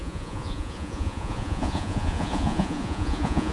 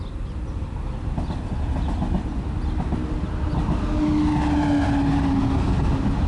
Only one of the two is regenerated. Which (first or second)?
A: first